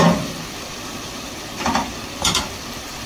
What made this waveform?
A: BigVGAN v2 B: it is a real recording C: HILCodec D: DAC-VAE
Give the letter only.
A